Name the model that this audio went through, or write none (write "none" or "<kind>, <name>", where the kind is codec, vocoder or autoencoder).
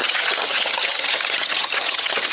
vocoder, HiFi-GAN